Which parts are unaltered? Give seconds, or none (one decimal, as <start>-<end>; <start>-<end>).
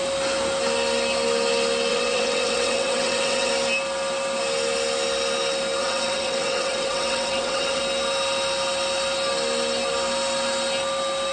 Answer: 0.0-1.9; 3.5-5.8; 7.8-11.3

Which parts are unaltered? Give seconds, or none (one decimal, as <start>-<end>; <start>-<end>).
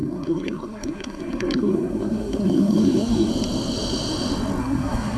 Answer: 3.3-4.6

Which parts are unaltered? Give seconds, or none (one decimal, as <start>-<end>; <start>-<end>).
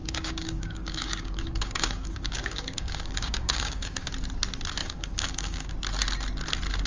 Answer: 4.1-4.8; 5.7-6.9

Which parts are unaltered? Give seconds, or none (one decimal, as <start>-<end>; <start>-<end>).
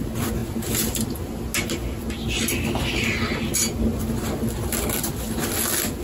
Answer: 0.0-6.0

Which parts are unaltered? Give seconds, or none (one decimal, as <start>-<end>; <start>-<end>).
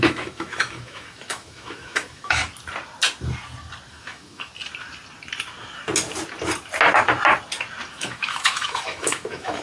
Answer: 2.4-3.9; 4.5-7.9